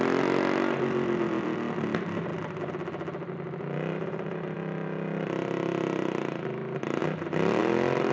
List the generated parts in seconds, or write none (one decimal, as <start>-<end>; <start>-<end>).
0.0-7.0; 7.6-8.1